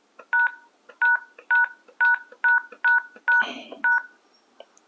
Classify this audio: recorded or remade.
recorded